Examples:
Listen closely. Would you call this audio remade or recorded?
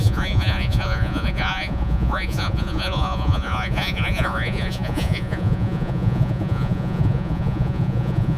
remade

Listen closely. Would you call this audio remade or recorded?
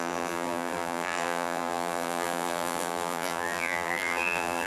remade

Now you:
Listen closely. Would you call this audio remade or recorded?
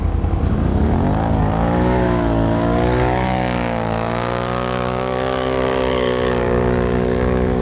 remade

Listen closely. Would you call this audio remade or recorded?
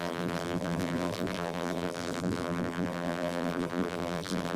remade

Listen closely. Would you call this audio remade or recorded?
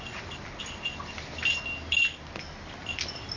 recorded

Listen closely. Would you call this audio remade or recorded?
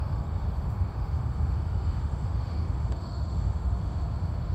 remade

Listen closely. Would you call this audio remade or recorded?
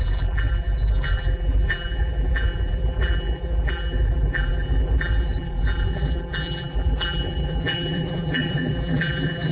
remade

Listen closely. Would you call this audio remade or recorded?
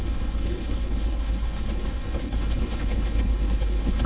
remade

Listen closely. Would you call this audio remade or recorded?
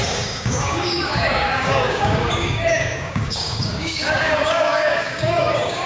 remade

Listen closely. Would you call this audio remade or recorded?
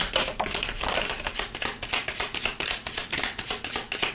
recorded